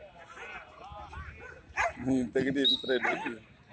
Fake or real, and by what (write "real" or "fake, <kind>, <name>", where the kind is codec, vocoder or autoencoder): real